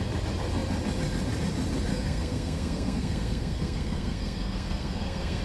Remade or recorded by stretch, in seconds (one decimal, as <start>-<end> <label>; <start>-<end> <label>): 0.0-1.9 recorded; 1.9-5.4 remade